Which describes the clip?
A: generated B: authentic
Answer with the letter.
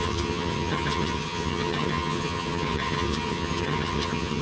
A